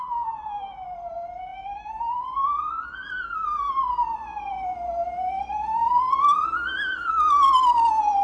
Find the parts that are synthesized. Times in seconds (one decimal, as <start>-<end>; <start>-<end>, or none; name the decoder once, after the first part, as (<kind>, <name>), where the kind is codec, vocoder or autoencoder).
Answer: none